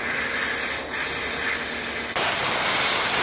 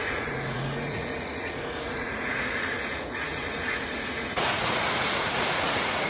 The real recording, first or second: first